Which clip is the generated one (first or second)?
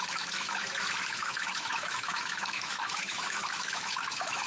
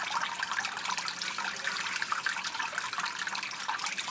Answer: first